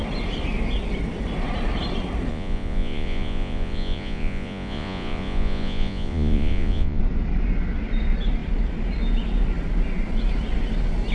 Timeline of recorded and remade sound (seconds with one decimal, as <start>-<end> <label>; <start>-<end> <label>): 0.0-2.3 recorded; 2.3-7.0 remade; 7.0-11.1 recorded